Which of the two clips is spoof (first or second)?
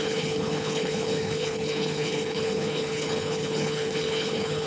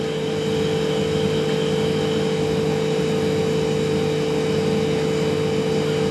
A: first